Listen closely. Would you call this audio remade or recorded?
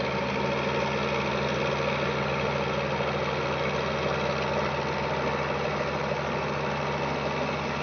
recorded